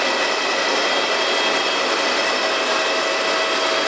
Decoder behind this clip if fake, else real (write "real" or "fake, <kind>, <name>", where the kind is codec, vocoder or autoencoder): real